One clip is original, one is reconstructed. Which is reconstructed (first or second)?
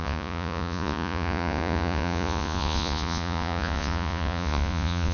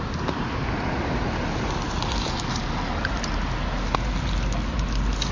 first